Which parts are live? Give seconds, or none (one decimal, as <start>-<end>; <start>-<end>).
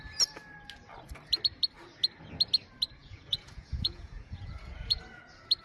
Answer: 0.0-3.0; 5.0-5.6